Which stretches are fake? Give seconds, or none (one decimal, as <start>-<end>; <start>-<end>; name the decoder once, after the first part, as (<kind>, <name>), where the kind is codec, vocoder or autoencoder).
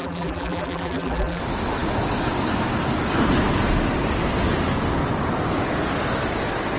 0.0-1.4 (vocoder, BigVGAN v2)